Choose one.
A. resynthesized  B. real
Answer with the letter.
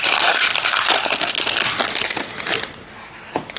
B